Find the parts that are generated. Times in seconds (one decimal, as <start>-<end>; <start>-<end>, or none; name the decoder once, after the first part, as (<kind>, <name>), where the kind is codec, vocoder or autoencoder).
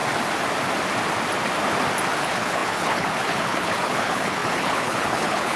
2.2-5.6 (codec, HILCodec)